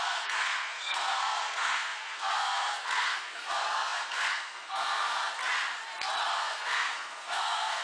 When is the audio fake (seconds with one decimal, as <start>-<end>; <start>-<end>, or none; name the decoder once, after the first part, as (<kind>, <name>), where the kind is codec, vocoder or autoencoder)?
0.0-5.2 (codec, SNAC); 6.3-7.8